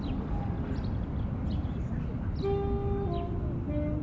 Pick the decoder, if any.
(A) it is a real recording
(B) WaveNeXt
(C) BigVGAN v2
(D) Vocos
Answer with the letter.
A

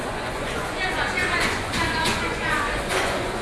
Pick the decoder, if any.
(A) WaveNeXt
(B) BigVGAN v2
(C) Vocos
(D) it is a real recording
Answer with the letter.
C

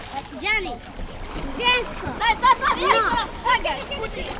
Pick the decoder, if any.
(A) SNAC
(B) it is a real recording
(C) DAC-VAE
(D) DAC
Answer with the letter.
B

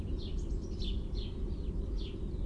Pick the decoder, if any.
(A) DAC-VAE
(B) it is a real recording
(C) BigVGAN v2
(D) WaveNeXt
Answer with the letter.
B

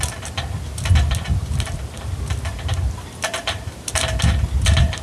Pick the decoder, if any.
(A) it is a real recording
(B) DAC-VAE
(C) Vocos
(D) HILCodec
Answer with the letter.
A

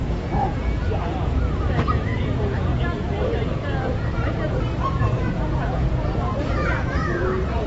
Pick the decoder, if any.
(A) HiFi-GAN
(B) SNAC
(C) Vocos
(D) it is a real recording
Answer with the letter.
C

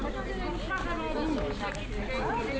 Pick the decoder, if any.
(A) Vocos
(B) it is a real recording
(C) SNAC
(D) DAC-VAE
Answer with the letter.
B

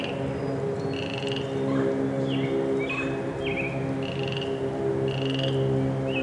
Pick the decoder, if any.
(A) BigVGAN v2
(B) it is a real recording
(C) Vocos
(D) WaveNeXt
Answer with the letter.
B